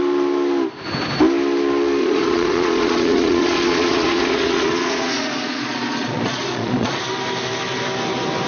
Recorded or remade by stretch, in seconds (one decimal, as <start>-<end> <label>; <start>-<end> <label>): 0.0-2.0 recorded; 2.0-7.0 remade; 7.0-8.5 recorded